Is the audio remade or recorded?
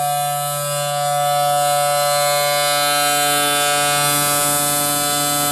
recorded